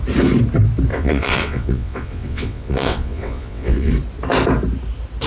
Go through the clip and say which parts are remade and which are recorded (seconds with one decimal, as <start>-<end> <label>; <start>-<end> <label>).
0.0-0.9 recorded; 0.9-3.9 remade; 3.9-5.3 recorded